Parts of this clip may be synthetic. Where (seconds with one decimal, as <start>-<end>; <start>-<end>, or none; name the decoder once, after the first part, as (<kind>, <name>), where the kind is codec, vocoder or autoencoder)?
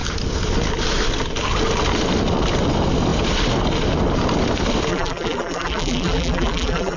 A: 4.9-7.0 (vocoder, BigVGAN v2)